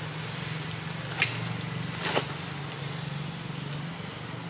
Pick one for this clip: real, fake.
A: real